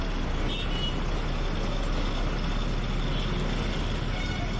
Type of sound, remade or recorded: recorded